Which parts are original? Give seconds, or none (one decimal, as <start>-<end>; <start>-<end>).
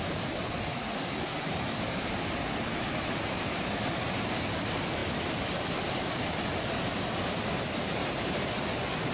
0.0-1.3; 3.4-8.0; 8.5-9.1